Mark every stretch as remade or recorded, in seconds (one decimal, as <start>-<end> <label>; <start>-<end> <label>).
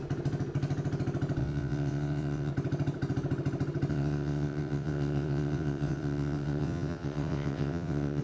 0.0-1.4 recorded; 1.4-2.5 remade; 2.5-3.9 recorded; 3.9-8.2 remade